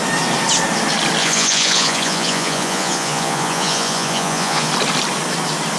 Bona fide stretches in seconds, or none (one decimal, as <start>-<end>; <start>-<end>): 0.0-1.2; 4.7-5.8